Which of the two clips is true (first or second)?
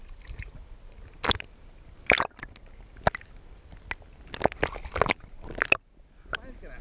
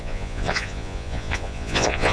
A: first